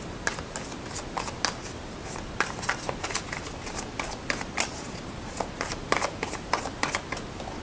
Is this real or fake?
real